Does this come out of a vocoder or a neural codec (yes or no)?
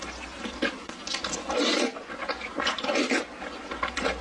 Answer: no